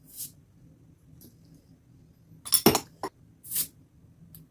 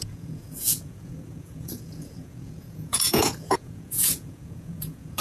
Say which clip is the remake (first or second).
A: second